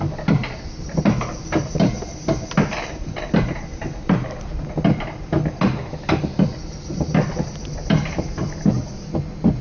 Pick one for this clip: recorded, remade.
recorded